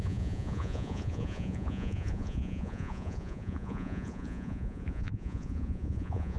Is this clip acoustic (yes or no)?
no